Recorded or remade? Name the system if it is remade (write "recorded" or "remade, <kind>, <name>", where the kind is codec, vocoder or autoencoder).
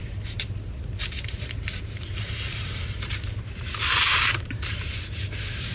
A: remade, vocoder, BigVGAN v2